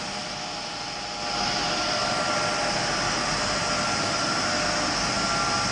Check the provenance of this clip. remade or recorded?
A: recorded